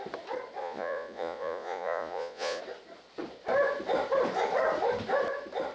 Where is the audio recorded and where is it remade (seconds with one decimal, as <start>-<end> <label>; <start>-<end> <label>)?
0.0-0.6 recorded; 0.6-2.6 remade; 2.6-5.7 recorded